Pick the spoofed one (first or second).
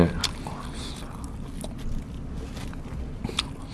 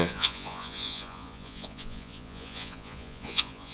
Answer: second